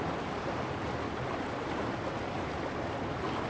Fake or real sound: real